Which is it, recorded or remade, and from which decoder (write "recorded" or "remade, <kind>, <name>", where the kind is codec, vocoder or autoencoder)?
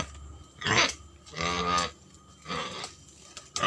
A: recorded